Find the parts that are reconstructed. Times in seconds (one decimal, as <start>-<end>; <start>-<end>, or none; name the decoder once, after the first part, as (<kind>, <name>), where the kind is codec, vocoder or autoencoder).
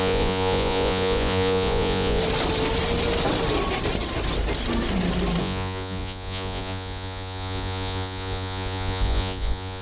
0.0-2.2 (vocoder, Vocos); 5.4-9.8